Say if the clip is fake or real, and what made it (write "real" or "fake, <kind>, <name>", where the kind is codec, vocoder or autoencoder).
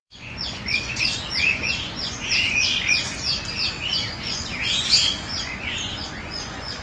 fake, vocoder, Vocos